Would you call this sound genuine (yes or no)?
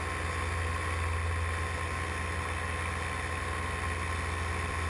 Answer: yes